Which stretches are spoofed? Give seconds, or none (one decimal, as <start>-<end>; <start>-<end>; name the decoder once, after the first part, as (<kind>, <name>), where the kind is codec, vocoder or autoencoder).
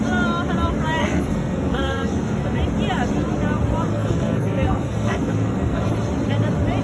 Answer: 1.0-2.6 (codec, SNAC); 3.9-5.9